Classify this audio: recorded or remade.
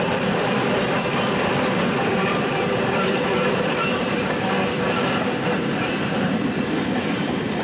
remade